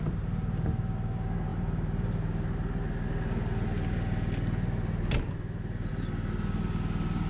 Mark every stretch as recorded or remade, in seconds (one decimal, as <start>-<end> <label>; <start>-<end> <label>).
0.0-7.3 recorded